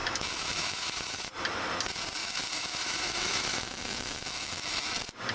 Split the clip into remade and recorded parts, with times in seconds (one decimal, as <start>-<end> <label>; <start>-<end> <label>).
0.0-1.3 remade; 1.3-2.2 recorded; 2.2-4.8 remade; 4.8-5.3 recorded